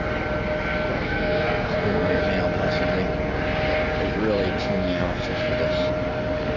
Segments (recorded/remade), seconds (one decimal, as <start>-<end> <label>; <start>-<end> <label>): 0.0-0.9 recorded; 0.9-2.2 remade; 2.2-4.6 recorded; 4.6-5.5 remade; 5.5-6.6 recorded